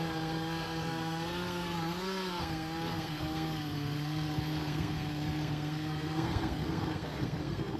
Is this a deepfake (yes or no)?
yes